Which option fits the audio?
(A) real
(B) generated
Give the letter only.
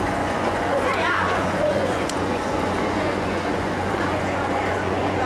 B